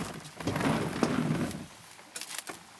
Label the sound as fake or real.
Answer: real